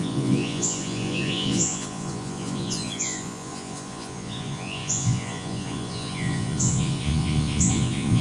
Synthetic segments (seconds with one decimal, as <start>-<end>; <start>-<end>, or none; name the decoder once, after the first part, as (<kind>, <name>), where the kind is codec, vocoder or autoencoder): 0.0-8.2 (vocoder, Vocos)